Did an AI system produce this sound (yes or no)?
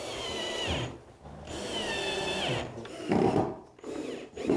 yes